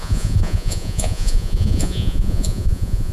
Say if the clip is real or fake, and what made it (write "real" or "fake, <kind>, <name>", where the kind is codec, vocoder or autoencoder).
fake, vocoder, Vocos